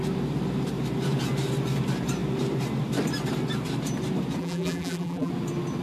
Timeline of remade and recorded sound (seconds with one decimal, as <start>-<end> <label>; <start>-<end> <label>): 0.0-4.4 recorded; 4.4-5.3 remade; 5.3-5.8 recorded